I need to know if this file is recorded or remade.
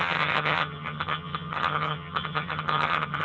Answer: remade